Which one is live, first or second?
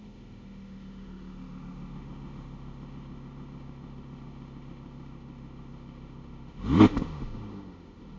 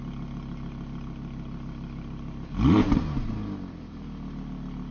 second